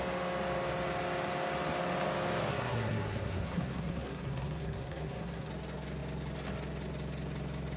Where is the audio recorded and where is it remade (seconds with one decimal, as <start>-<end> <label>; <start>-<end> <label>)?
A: 0.0-2.5 recorded; 2.5-5.5 remade; 5.5-7.8 recorded